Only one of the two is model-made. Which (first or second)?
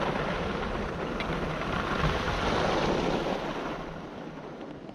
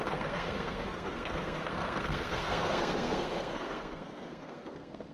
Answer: second